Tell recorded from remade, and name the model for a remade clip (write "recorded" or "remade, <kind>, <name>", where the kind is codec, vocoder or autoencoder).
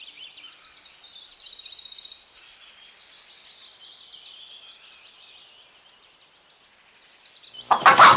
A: recorded